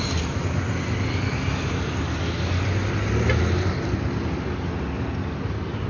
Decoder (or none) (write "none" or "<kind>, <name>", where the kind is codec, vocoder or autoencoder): none